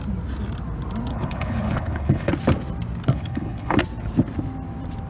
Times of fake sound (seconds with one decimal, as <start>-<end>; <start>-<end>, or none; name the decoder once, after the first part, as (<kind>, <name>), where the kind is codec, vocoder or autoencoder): 1.1-2.3 (codec, HILCodec); 3.1-3.8